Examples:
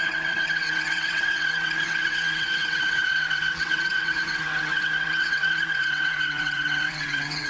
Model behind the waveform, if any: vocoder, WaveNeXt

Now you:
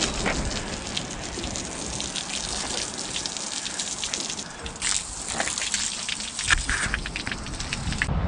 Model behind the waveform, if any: none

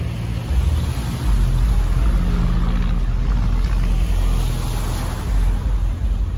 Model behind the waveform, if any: none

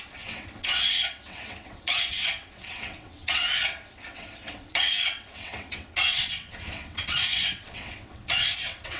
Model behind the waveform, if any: vocoder, WaveNeXt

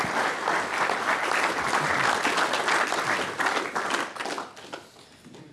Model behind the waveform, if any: none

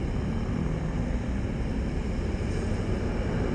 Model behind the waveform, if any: none